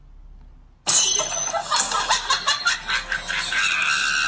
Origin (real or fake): real